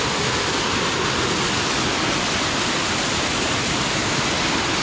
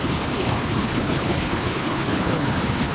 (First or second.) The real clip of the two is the first